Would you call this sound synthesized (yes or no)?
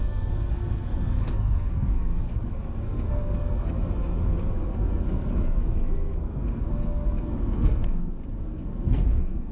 yes